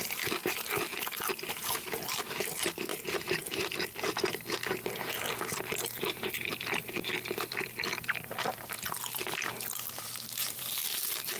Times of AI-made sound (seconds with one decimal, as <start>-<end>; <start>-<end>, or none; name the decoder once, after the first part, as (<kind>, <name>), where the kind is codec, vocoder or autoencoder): 0.0-11.4 (vocoder, BigVGAN v2)